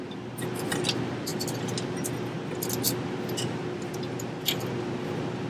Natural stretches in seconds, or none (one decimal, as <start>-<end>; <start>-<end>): 0.0-5.5